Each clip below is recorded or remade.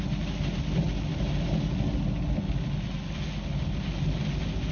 recorded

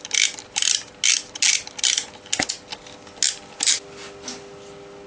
recorded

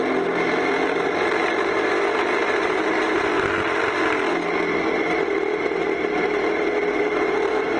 recorded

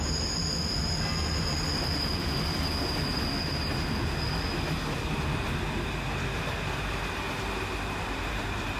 recorded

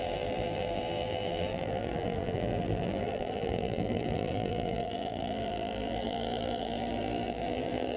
remade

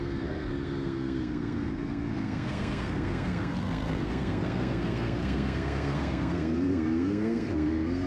remade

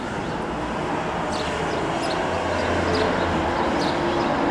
recorded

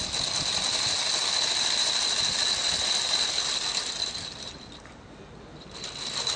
recorded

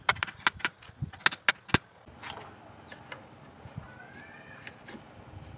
recorded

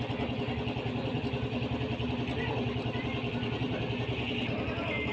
recorded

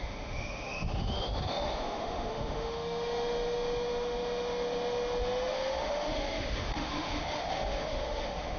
remade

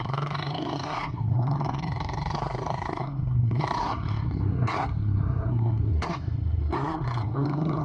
remade